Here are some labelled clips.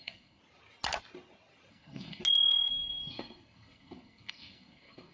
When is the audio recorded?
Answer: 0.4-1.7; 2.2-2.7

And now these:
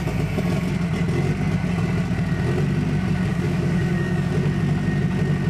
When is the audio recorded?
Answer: 0.0-3.3; 4.3-5.5

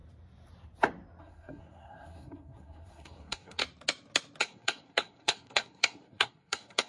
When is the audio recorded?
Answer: 0.0-1.2; 3.6-4.4

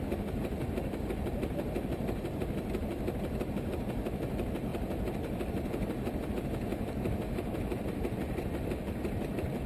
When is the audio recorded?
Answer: 0.0-4.7; 6.3-6.7

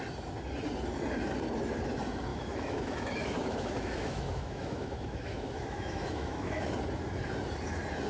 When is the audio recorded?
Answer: 0.0-2.3; 6.7-8.1

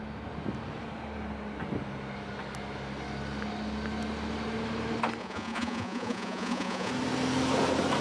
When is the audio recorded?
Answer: 0.0-5.2; 6.9-8.0

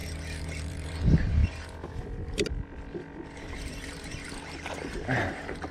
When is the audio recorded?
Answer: 0.0-0.6; 1.4-3.4